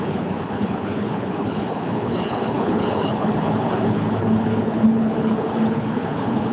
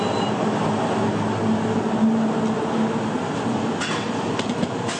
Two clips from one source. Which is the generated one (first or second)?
first